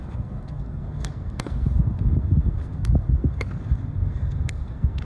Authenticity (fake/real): fake